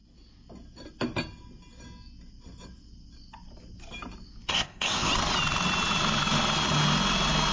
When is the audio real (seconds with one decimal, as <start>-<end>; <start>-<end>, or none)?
0.0-4.5; 5.1-7.5